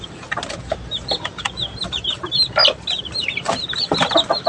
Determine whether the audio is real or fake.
real